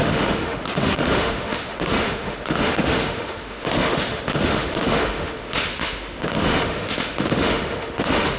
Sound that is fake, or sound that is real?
fake